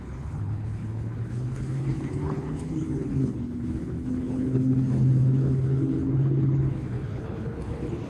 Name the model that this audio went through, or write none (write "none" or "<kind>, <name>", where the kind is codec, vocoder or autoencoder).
codec, HILCodec